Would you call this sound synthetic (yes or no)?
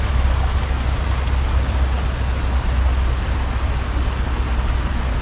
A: no